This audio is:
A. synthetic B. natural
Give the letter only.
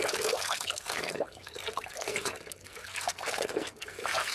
A